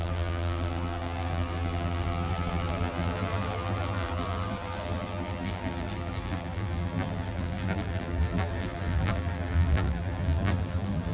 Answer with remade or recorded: remade